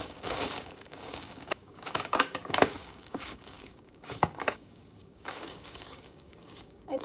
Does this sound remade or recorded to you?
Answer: remade